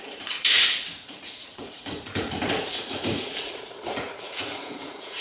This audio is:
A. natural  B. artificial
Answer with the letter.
B